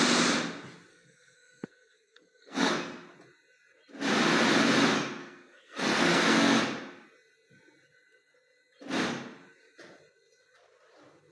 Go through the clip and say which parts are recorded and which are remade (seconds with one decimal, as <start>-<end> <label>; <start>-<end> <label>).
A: 0.0-0.9 recorded; 0.9-2.7 remade; 2.7-5.2 recorded; 5.2-6.6 remade; 6.6-11.3 recorded